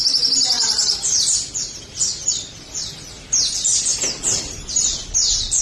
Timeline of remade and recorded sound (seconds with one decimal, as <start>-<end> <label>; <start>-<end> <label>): 0.0-5.6 recorded